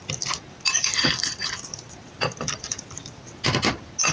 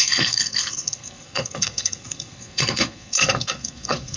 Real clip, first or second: first